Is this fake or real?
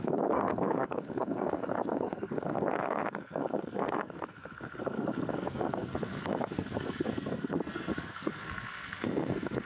fake